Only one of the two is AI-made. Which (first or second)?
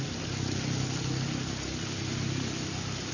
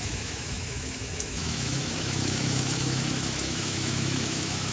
second